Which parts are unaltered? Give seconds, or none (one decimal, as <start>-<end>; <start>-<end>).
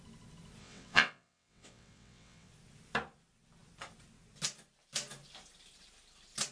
0.0-0.6; 2.5-6.5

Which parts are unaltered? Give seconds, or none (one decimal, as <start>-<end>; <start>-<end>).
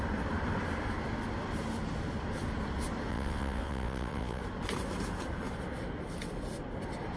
0.0-3.1; 4.4-7.2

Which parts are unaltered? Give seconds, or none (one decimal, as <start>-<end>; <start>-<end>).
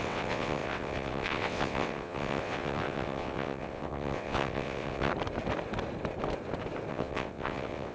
5.1-6.9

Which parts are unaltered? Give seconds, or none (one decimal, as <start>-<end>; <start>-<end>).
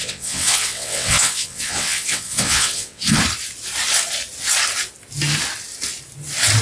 3.2-6.6